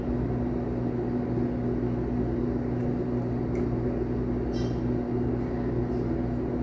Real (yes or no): yes